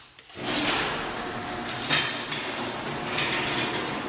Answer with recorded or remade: recorded